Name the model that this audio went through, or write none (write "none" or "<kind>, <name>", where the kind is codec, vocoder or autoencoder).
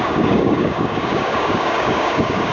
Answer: codec, DAC